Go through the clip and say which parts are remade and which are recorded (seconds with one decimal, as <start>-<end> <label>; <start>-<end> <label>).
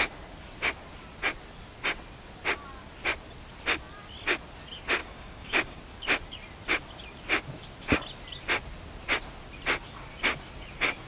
0.0-5.0 recorded; 5.0-5.8 remade; 5.8-11.1 recorded